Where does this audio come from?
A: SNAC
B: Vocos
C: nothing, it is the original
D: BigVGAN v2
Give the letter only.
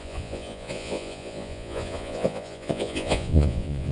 B